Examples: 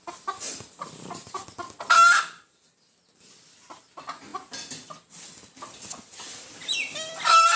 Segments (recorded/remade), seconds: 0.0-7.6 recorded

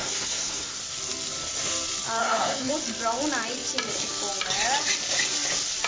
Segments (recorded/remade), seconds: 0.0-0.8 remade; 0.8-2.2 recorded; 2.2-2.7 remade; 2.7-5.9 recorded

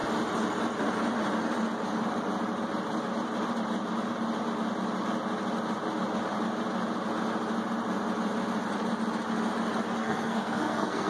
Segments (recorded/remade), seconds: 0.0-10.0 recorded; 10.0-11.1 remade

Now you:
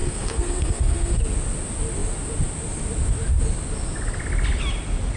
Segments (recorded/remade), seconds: 0.0-1.2 remade; 1.2-5.2 recorded

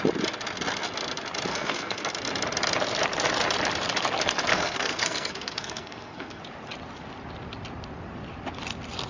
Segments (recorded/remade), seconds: 0.0-1.5 recorded; 1.5-2.1 remade; 2.1-4.5 recorded; 4.5-6.4 remade; 6.4-9.1 recorded